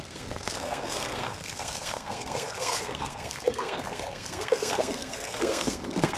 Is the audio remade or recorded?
remade